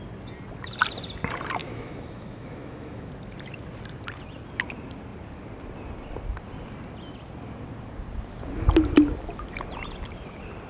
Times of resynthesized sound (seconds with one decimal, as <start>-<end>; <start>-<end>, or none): 1.6-3.1

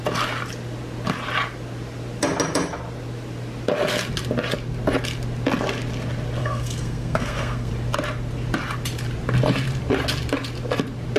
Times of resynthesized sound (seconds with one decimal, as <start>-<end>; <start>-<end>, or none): 6.4-7.7

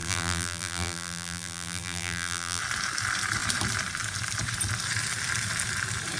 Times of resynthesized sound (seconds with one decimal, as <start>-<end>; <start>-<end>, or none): 0.0-2.6

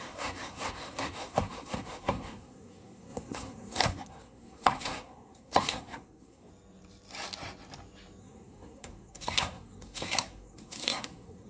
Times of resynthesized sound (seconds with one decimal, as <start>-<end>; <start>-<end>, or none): 0.0-6.5; 8.2-11.5

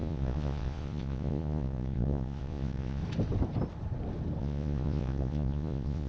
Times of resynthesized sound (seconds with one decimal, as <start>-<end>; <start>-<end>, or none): 0.0-3.0; 4.4-6.1

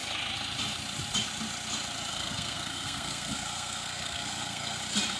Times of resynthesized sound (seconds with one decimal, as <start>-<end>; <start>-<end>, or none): 2.1-4.8